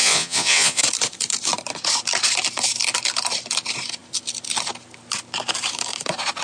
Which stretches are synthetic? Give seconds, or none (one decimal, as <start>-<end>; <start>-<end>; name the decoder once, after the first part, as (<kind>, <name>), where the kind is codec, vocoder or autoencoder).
0.0-0.8 (vocoder, Vocos)

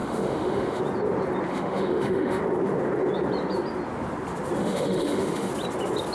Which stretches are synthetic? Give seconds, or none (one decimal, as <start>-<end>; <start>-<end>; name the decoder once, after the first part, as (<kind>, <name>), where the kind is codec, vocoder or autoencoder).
0.0-0.8 (autoencoder, DAC-VAE); 1.5-2.4; 4.6-5.5

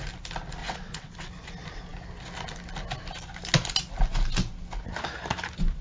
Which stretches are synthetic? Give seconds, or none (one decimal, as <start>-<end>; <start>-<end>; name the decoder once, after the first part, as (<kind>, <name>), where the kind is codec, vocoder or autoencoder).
0.6-1.3 (vocoder, WaveNeXt)

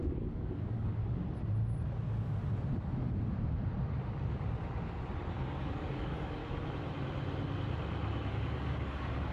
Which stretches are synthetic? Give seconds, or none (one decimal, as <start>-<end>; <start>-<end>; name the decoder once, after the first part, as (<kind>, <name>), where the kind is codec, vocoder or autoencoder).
0.0-1.0 (codec, DAC); 5.3-6.4; 8.3-9.3